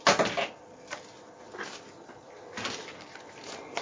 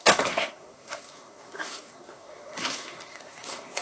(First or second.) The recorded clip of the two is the first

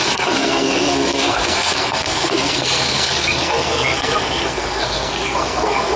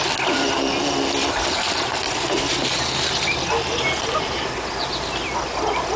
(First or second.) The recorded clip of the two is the second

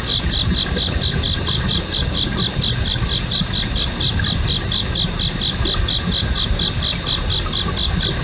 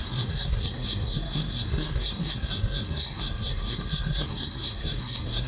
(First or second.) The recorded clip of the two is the first